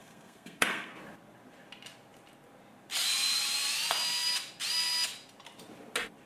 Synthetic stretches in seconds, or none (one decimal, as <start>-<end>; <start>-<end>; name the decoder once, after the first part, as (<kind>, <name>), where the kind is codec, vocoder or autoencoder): 0.0-0.9 (codec, SNAC)